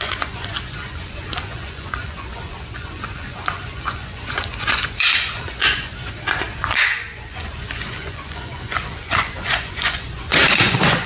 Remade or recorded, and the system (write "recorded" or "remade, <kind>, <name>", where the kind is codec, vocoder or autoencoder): remade, vocoder, Vocos